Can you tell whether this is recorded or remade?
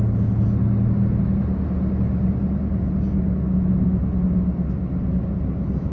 recorded